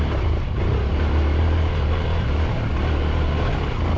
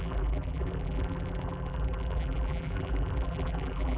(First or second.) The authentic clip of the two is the first